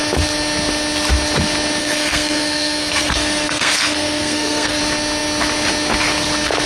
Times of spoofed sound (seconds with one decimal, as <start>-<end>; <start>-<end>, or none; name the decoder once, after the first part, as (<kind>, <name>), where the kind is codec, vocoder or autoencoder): 1.8-4.8 (codec, SNAC)